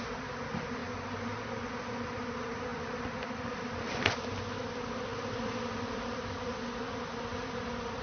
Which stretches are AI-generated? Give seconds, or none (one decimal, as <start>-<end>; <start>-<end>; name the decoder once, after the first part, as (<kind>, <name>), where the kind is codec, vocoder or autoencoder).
none